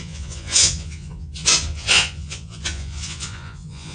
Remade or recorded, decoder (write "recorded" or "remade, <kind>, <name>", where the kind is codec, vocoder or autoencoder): remade, vocoder, Vocos